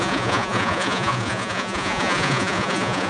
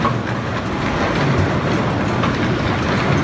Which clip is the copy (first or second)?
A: first